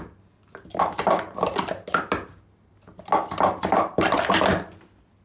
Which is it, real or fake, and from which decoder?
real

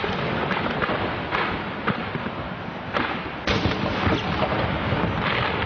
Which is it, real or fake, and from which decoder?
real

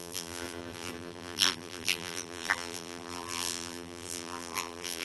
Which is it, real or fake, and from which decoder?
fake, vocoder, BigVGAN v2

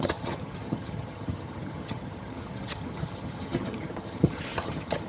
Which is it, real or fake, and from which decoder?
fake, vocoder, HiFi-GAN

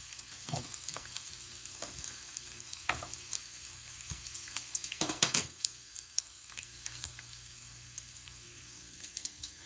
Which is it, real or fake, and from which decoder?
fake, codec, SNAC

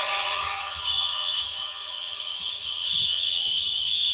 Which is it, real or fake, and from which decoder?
fake, vocoder, HiFi-GAN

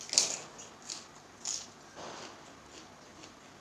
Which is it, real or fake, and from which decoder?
real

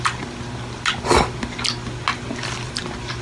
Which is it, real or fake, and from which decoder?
real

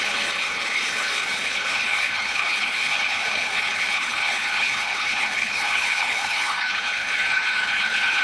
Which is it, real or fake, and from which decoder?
fake, codec, HILCodec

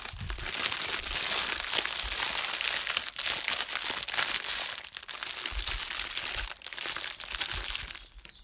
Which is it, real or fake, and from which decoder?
real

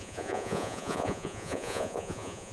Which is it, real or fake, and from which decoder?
fake, vocoder, Vocos